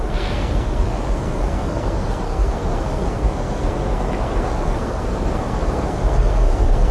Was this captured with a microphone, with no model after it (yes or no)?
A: no